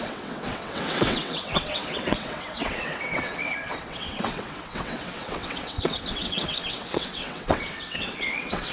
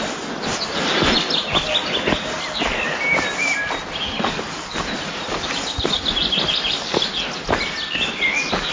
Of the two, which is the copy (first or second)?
first